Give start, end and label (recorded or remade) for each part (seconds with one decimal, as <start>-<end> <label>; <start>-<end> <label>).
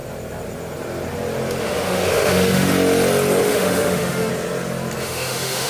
0.0-1.6 recorded; 1.6-2.7 remade; 2.7-3.4 recorded; 3.4-4.3 remade; 4.3-5.0 recorded; 5.0-5.7 remade